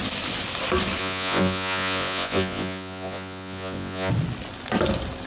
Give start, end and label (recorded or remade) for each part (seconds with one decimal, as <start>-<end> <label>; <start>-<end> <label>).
0.0-1.0 recorded; 1.0-4.1 remade; 4.1-5.3 recorded